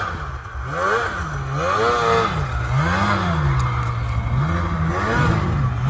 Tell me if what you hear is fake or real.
real